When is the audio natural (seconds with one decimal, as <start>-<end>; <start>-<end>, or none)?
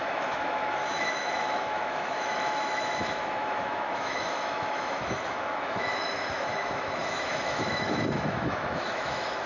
none